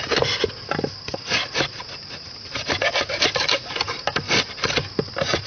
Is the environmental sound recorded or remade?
recorded